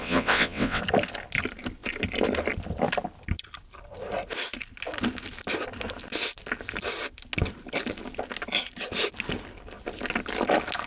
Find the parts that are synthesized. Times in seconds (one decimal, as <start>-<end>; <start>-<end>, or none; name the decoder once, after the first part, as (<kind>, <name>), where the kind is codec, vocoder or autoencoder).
0.0-0.8 (vocoder, WaveNeXt)